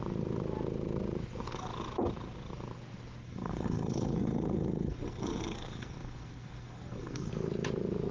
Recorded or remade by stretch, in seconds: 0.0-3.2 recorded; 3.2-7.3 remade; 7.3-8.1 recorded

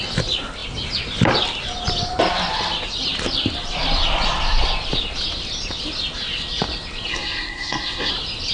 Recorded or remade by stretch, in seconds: 0.0-7.1 recorded; 7.1-8.1 remade; 8.1-8.5 recorded